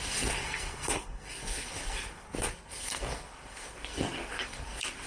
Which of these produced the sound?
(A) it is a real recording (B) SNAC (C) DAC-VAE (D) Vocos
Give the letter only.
B